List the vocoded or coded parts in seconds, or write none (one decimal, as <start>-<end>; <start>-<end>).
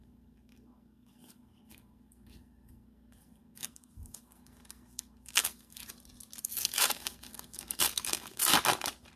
0.0-5.8; 6.4-8.4